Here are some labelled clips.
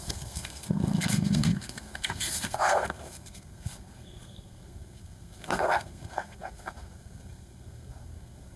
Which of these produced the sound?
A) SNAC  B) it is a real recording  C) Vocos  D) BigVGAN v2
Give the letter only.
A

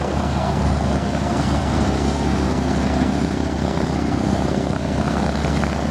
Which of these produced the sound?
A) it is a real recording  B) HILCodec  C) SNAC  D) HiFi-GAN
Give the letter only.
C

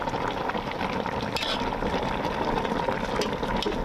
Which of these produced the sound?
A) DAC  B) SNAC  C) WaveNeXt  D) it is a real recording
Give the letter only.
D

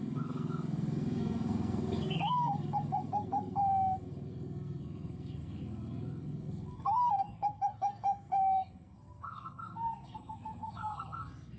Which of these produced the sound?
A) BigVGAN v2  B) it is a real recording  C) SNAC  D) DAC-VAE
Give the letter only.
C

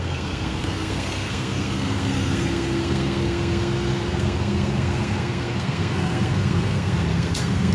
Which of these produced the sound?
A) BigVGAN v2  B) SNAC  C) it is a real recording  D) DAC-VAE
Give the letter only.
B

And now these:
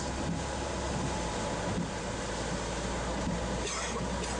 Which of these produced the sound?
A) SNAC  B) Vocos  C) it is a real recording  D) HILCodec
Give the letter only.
C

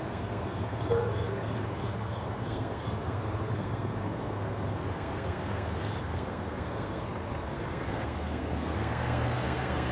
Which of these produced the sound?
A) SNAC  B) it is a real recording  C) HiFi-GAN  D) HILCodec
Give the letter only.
A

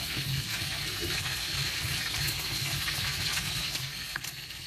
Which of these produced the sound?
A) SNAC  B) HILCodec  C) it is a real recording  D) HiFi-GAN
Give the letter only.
A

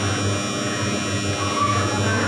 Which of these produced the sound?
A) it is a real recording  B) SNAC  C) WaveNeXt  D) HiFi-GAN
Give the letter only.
A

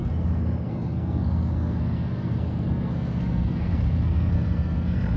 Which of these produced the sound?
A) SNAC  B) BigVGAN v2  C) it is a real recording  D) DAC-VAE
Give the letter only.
A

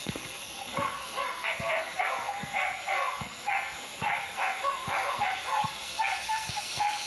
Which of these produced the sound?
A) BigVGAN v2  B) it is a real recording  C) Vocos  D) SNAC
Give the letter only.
D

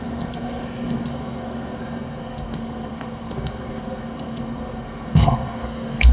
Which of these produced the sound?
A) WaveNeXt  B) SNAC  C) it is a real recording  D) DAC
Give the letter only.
B